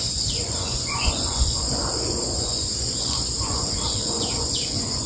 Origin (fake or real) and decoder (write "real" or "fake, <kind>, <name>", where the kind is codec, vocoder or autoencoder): fake, vocoder, Vocos